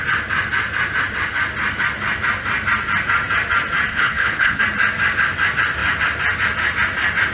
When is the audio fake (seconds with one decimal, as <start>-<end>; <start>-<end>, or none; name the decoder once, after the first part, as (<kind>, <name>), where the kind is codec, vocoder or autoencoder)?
3.9-4.6 (codec, HILCodec)